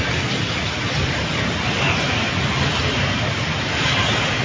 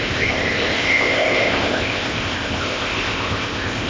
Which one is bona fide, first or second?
first